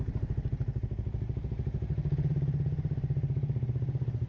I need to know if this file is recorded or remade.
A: remade